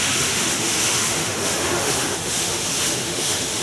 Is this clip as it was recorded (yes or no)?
no